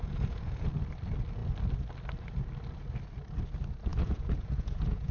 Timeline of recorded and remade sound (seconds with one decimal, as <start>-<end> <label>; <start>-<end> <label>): 0.0-0.7 remade; 0.7-3.9 recorded; 3.9-5.1 remade